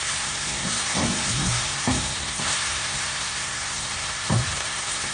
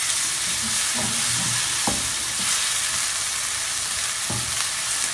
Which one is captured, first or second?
second